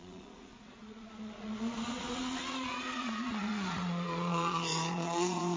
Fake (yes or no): yes